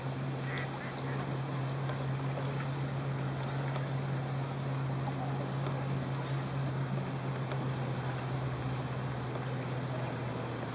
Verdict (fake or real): real